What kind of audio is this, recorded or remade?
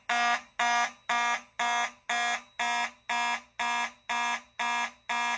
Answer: recorded